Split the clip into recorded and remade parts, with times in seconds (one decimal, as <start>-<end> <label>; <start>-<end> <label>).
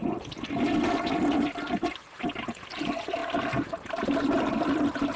0.0-5.2 remade